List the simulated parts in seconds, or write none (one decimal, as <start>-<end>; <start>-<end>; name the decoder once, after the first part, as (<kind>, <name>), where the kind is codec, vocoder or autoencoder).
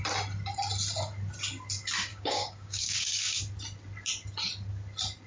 2.1-3.4 (codec, DAC)